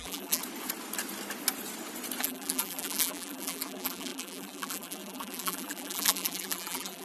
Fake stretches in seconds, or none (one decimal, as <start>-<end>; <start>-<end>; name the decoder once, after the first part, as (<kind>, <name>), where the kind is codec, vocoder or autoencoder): 0.0-0.4 (vocoder, BigVGAN v2); 2.2-7.0